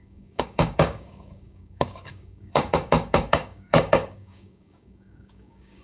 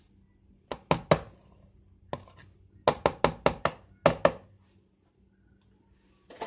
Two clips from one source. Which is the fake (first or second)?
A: first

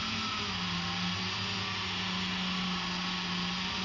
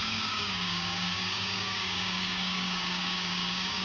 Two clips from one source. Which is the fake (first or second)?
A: second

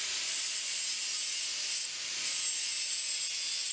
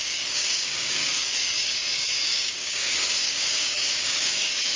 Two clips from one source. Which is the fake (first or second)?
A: second